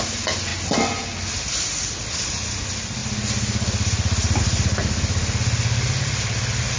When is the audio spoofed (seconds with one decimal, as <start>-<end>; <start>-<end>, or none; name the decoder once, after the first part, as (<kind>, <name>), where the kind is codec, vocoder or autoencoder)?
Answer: none

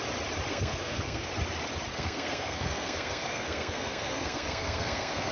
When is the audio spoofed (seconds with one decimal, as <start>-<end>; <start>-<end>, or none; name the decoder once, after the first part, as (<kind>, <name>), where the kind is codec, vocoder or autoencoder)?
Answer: 0.5-1.3 (codec, SNAC); 1.9-5.3

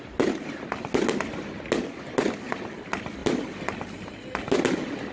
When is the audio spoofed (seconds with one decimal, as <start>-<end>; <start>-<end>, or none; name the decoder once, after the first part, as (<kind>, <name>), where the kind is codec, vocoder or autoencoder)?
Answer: none